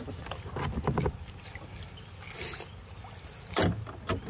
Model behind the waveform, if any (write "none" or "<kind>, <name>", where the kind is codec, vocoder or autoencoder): none